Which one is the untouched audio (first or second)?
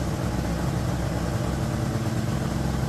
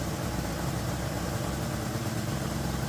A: first